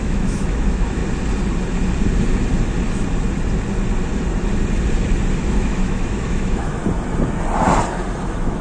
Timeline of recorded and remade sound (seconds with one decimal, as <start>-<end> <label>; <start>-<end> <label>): 0.0-1.0 remade; 1.0-5.5 recorded; 5.5-6.8 remade; 6.8-8.2 recorded; 8.2-8.6 remade